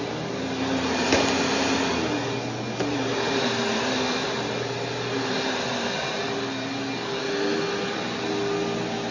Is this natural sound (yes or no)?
yes